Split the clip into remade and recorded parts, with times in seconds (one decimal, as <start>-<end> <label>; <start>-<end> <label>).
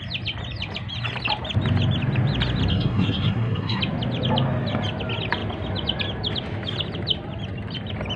0.0-2.7 recorded; 2.7-3.8 remade; 3.8-8.2 recorded